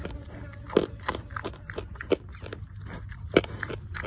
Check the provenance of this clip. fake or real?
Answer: real